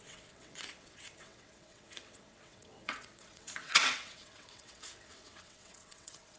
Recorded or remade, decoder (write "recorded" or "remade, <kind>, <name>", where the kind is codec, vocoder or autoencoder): remade, vocoder, WaveNeXt